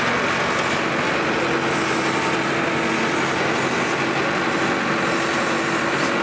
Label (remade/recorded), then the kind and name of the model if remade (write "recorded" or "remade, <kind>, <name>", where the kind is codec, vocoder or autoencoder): recorded